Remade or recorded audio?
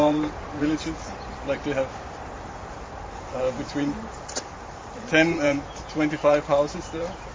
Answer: remade